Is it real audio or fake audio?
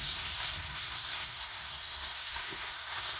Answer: fake